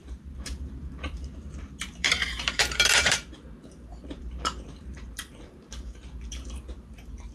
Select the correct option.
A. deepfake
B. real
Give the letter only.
A